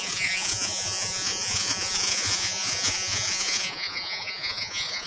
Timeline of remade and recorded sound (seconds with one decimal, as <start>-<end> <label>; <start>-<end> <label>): 0.0-5.1 remade